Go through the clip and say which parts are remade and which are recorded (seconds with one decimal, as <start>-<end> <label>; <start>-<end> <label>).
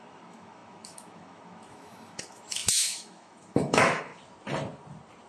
0.0-4.1 remade; 4.1-5.3 recorded